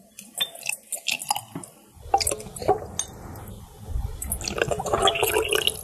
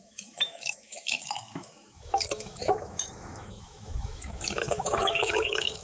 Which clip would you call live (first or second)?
first